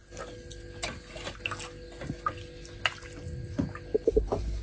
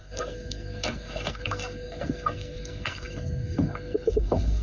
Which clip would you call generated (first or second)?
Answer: second